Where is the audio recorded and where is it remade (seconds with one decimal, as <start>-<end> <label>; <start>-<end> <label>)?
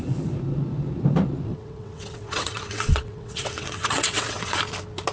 0.0-1.5 recorded; 1.5-4.6 remade; 4.6-5.1 recorded